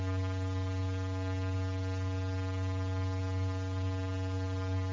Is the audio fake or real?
fake